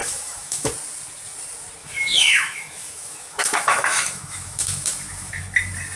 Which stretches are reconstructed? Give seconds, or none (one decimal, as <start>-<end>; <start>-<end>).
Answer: 0.0-0.7; 1.8-5.4